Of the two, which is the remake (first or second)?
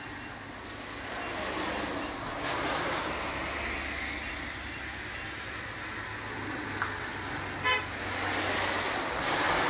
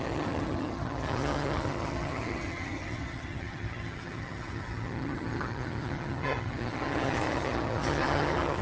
second